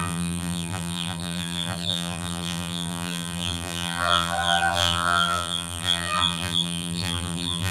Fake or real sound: fake